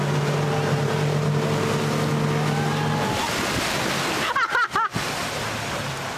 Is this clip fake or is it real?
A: real